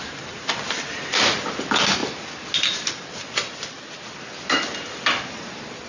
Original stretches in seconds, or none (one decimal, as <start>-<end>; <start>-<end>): 0.0-5.9